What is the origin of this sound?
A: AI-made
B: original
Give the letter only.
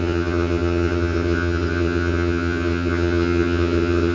A